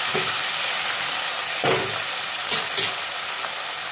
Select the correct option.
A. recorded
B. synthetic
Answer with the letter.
A